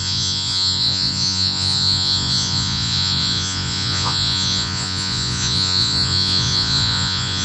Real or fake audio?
fake